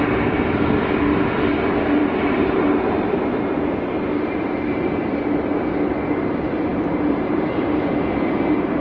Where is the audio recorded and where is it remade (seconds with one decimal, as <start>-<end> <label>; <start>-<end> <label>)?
0.0-2.0 recorded; 2.0-5.0 remade; 5.0-6.7 recorded; 6.7-7.5 remade; 7.5-8.8 recorded